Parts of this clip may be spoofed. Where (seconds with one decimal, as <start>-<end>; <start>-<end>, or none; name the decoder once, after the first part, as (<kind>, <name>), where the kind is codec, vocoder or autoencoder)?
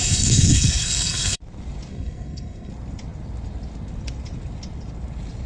0.0-1.4 (codec, SNAC); 1.9-2.7